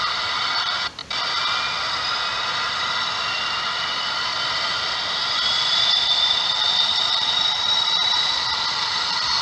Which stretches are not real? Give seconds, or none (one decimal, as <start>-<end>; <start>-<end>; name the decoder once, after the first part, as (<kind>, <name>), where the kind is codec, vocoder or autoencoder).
0.0-1.0 (vocoder, BigVGAN v2); 2.6-9.4